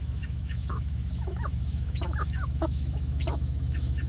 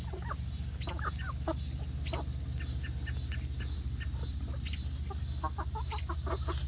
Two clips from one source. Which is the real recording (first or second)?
second